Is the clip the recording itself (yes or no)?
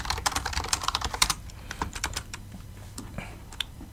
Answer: no